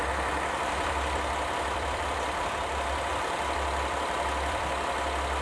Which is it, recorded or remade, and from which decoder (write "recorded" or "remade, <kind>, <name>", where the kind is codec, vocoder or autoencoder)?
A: remade, vocoder, BigVGAN v2